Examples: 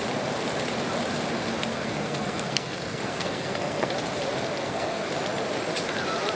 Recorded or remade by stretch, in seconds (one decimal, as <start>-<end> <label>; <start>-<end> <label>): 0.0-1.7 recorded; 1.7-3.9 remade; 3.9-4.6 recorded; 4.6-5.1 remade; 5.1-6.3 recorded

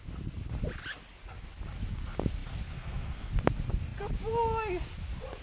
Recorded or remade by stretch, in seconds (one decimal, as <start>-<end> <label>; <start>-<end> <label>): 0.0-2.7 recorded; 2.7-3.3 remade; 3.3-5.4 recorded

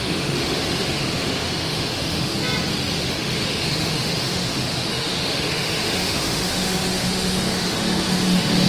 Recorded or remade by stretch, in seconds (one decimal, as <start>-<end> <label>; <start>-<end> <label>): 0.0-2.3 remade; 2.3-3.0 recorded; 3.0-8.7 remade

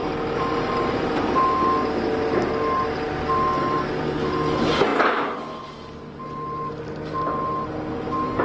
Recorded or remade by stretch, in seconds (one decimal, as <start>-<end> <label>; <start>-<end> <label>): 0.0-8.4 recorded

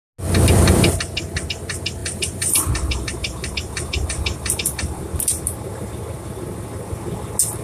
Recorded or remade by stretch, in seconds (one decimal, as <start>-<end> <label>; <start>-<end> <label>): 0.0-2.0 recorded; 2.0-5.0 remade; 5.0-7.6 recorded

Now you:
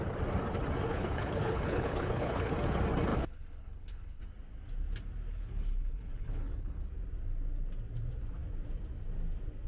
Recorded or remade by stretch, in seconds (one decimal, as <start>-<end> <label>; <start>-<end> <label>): 0.0-0.9 recorded; 0.9-2.5 remade; 2.5-3.1 recorded; 3.1-4.2 remade; 4.2-5.3 recorded; 5.3-6.9 remade; 6.9-9.7 recorded

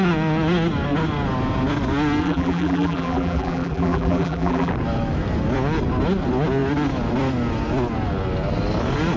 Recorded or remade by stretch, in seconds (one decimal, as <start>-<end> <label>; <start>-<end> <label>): 0.0-2.2 recorded; 2.2-4.7 remade; 4.7-9.2 recorded